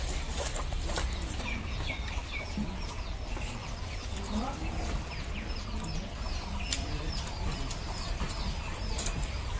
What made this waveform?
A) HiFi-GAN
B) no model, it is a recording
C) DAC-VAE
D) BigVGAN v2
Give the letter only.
B